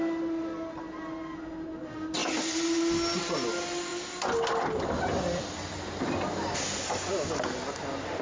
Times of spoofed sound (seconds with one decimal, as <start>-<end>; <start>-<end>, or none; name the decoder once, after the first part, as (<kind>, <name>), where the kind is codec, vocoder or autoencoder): none